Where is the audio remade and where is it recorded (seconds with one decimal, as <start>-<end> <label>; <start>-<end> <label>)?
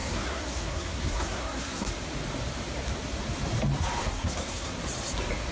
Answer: 0.0-1.9 remade; 1.9-4.0 recorded; 4.0-4.8 remade; 4.8-5.5 recorded